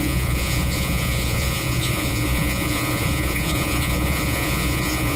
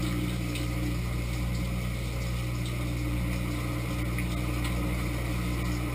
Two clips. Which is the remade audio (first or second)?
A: first